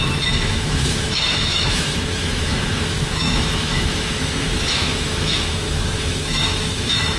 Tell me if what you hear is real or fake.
fake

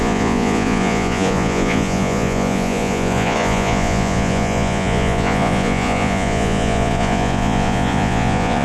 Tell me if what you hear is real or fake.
fake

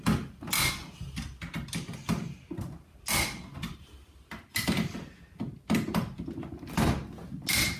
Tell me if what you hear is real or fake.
real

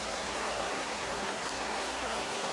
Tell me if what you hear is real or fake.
fake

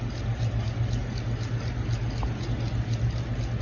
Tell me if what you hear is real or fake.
real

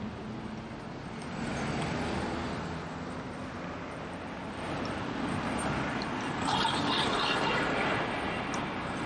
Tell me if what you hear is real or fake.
real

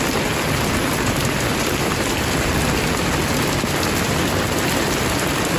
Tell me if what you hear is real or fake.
fake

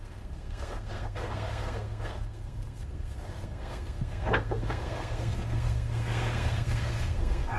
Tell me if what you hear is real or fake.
fake